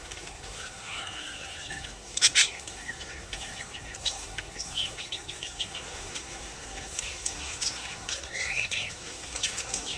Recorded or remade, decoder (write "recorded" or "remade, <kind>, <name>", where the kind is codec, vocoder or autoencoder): remade, codec, SNAC